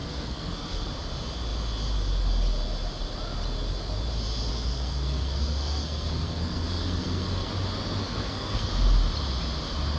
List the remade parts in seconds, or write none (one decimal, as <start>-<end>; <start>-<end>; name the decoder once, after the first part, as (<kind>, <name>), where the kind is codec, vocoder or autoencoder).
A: 0.0-0.9 (codec, SNAC); 4.5-7.5; 8.0-8.7